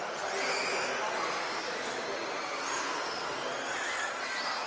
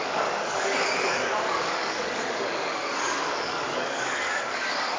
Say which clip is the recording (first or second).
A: first